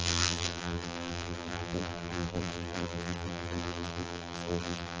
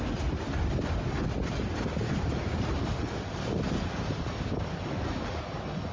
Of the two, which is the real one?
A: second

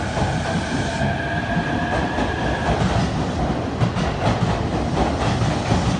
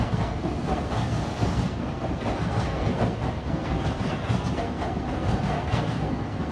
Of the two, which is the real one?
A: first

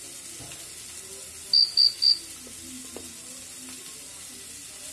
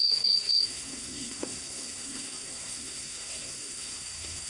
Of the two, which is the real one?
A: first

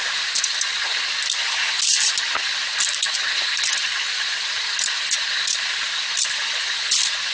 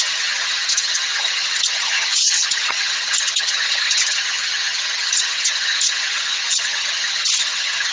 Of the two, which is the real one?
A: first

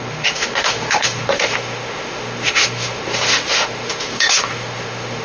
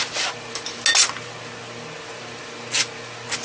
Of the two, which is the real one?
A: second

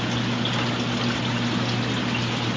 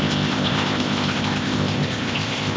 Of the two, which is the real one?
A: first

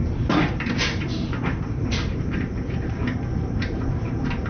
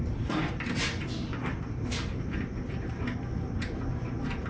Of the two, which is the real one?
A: second